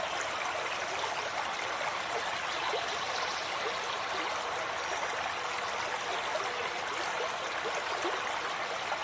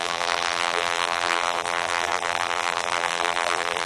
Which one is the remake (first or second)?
second